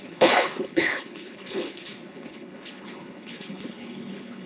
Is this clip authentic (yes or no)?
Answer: no